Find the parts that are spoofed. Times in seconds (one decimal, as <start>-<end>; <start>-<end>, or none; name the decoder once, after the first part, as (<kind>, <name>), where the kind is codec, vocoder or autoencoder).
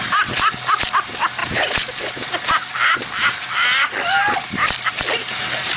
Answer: 1.4-2.0 (vocoder, BigVGAN v2)